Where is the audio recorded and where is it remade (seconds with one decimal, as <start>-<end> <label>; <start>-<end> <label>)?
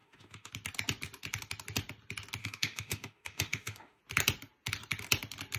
0.0-0.5 remade; 0.5-2.4 recorded; 2.4-4.0 remade; 4.0-5.6 recorded